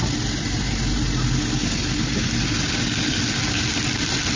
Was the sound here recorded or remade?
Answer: recorded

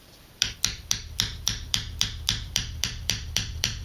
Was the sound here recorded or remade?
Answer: remade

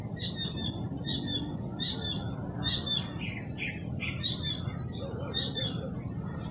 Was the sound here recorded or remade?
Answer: remade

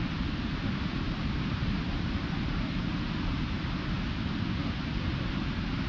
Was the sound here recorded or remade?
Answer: remade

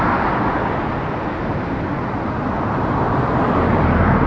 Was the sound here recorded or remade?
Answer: recorded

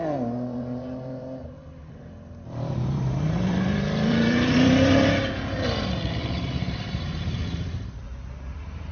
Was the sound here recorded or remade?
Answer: remade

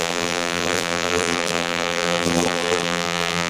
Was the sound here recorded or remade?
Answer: remade